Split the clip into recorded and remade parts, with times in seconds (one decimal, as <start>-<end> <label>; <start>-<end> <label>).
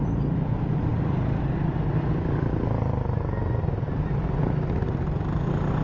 0.0-5.8 recorded